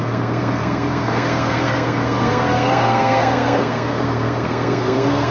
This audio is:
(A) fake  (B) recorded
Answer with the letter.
A